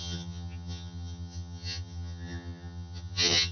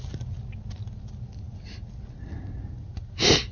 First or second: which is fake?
first